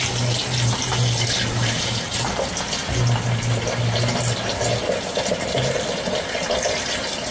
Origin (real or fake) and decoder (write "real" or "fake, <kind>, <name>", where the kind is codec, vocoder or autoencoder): real